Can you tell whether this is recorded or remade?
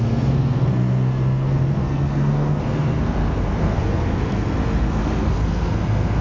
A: remade